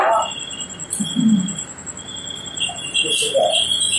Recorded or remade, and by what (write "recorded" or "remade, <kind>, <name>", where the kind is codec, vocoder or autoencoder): recorded